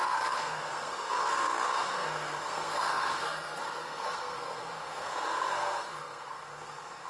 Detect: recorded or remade remade